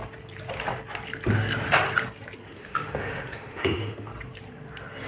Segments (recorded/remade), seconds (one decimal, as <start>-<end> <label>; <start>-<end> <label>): 0.0-2.5 recorded; 2.5-4.1 remade; 4.1-5.1 recorded